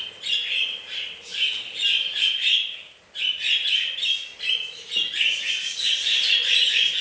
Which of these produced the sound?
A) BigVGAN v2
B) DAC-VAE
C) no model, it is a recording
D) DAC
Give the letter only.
C